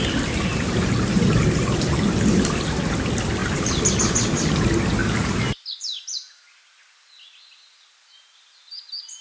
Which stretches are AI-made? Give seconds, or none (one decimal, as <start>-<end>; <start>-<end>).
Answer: 0.5-1.9; 3.4-3.9; 5.0-5.5